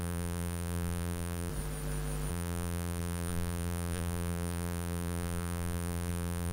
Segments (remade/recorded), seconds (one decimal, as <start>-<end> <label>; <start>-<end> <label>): 0.0-1.5 remade; 1.5-2.3 recorded; 2.3-6.5 remade